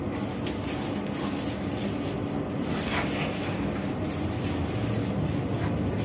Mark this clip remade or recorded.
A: remade